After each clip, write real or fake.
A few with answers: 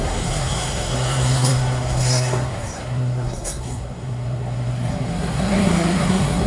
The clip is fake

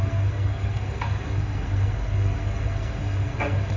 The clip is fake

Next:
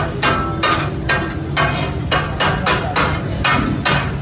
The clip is real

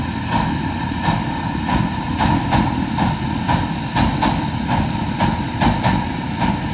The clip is real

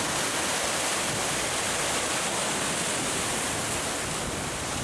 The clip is real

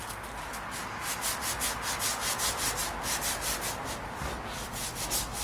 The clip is real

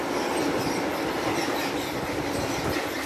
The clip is real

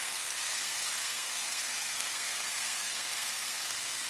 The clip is fake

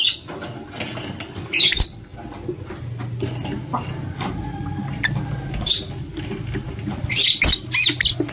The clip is real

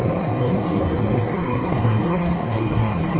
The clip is fake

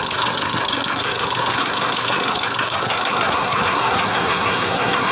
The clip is fake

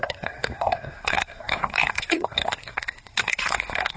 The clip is fake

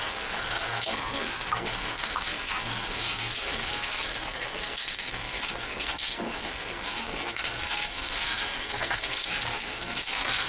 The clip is fake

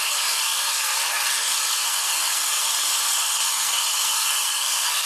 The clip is fake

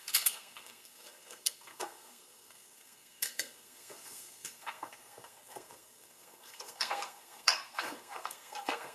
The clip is fake